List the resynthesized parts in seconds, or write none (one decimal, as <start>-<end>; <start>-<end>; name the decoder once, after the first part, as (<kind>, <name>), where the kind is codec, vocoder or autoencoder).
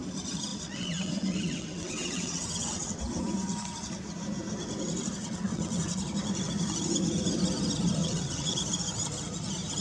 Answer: 0.5-3.0 (vocoder, WaveNeXt); 5.2-6.0; 8.0-8.6